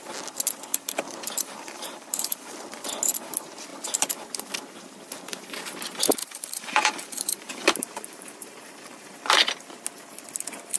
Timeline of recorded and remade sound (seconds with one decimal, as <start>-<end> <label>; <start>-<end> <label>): 0.0-0.7 recorded; 0.7-2.6 remade; 2.6-6.2 recorded; 6.2-9.3 remade; 9.3-10.8 recorded